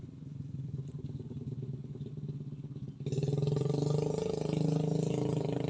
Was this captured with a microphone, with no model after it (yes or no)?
yes